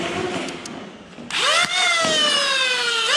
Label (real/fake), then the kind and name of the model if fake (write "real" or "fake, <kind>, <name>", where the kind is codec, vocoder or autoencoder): real